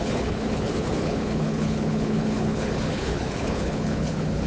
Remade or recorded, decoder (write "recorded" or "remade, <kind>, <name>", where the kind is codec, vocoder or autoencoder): remade, codec, HILCodec